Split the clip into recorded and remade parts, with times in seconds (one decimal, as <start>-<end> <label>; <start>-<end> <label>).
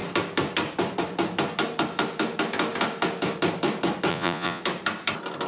0.0-4.1 recorded; 4.1-4.6 remade; 4.6-5.5 recorded